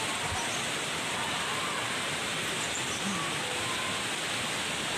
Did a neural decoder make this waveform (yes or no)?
no